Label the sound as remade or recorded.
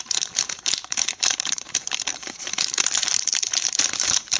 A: remade